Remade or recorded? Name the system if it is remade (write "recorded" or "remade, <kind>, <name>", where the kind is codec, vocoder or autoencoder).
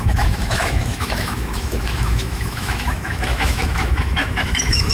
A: remade, autoencoder, DAC-VAE